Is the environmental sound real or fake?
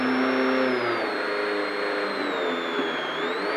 real